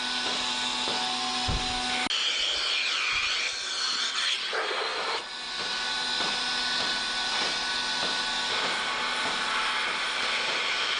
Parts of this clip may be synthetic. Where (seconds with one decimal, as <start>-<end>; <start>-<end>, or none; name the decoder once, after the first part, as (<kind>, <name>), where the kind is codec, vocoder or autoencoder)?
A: none